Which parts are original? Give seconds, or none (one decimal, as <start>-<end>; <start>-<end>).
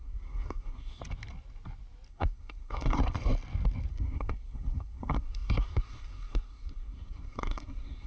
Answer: 1.0-2.1; 3.0-3.9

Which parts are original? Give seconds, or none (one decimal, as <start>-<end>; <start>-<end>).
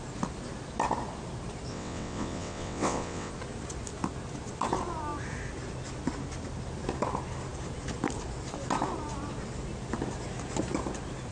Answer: 0.0-1.7; 3.3-11.3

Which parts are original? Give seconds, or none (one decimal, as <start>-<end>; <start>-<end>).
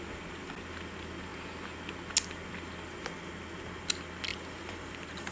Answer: 0.0-4.3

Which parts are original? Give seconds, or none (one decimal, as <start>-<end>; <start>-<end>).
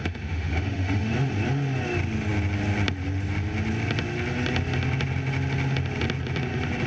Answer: 1.1-6.9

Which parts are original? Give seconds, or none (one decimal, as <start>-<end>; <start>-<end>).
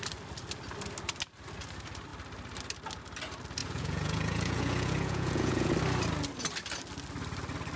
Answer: 0.0-3.6; 5.7-7.8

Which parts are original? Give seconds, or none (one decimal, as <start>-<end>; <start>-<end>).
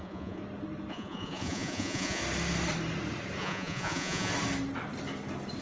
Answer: 0.4-0.9; 2.2-3.4; 4.3-5.6